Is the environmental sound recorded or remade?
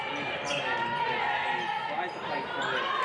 recorded